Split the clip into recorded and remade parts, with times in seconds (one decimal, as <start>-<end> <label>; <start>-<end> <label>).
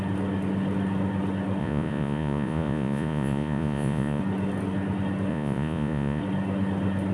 0.0-1.6 recorded; 1.6-4.2 remade; 4.2-5.3 recorded; 5.3-6.2 remade; 6.2-7.1 recorded